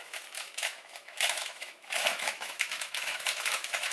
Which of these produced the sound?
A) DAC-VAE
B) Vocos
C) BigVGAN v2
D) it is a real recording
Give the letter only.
A